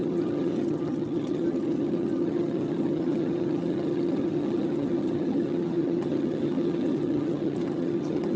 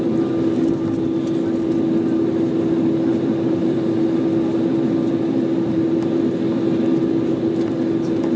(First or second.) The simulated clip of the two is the first